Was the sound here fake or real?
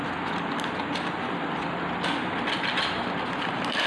real